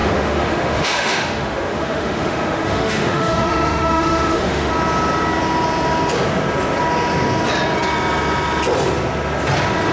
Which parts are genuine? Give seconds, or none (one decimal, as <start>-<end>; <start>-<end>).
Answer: 4.7-9.9

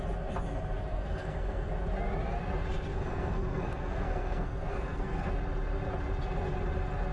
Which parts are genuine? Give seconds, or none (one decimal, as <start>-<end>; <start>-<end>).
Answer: 0.0-0.9; 1.7-2.9; 5.3-7.1